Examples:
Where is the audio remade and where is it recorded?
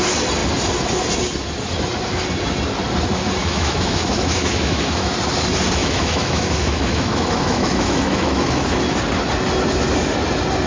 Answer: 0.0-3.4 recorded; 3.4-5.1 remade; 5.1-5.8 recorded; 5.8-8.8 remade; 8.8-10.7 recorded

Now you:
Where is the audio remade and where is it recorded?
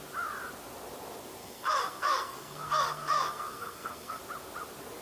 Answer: 0.0-1.4 recorded; 1.4-4.2 remade; 4.2-5.0 recorded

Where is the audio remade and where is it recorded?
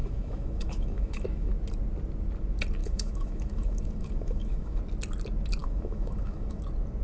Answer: 0.0-1.5 remade; 1.5-2.8 recorded; 2.8-4.8 remade; 4.8-5.6 recorded; 5.6-6.6 remade; 6.6-7.0 recorded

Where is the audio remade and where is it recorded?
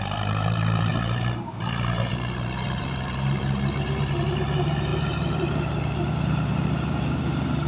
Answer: 0.0-7.7 remade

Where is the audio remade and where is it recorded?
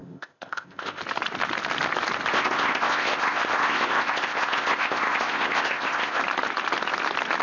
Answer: 0.0-1.0 remade; 1.0-2.3 recorded; 2.3-6.2 remade; 6.2-7.4 recorded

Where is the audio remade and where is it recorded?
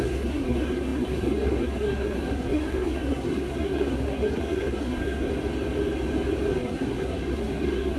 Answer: 0.0-5.3 remade; 5.3-6.5 recorded; 6.5-8.0 remade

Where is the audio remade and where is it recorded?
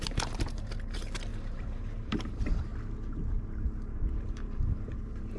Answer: 0.0-2.7 remade; 2.7-3.3 recorded; 3.3-5.4 remade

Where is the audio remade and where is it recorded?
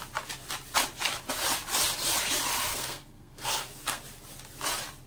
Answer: 0.0-2.7 recorded; 2.7-4.0 remade; 4.0-5.1 recorded